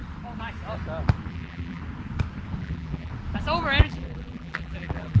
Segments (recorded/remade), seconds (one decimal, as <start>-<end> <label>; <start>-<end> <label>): 0.0-1.3 recorded; 1.3-1.8 remade; 1.8-2.6 recorded; 2.6-3.1 remade; 3.1-3.8 recorded; 3.8-5.2 remade